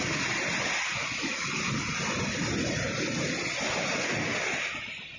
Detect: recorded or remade recorded